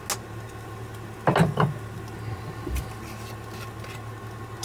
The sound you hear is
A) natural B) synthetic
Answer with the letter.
A